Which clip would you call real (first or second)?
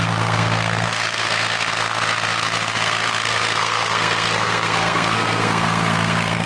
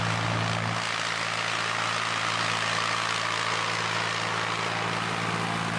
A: second